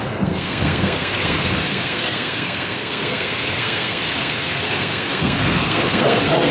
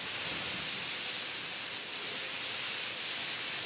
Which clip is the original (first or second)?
second